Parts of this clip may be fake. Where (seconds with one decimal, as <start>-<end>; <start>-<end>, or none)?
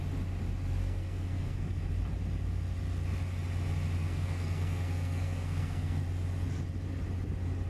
0.8-1.9; 4.0-6.0